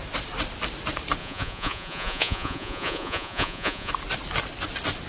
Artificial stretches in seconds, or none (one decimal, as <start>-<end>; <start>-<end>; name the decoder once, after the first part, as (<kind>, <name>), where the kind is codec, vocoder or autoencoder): 1.2-3.9 (vocoder, Vocos)